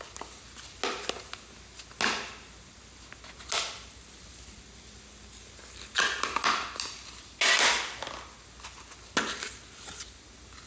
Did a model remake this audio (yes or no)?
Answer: no